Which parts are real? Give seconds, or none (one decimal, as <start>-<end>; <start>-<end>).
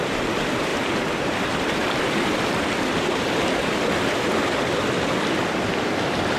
none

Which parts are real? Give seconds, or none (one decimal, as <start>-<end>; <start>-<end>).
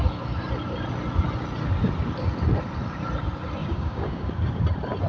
0.0-3.6; 4.3-5.1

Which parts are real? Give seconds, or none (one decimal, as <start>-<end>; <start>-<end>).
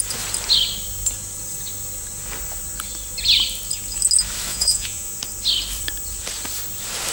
0.0-4.5; 5.1-7.1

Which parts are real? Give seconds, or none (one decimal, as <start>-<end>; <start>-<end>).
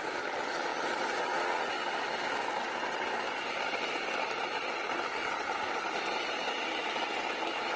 0.0-7.8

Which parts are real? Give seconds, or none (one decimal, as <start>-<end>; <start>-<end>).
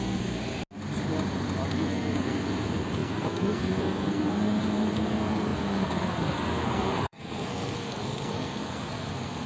0.4-1.7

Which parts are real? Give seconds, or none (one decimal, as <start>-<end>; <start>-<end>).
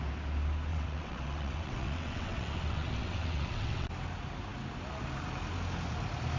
0.0-0.7; 3.9-6.4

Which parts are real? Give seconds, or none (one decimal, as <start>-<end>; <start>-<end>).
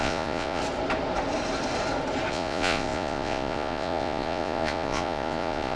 0.6-2.3